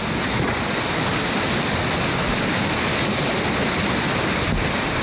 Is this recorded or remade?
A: recorded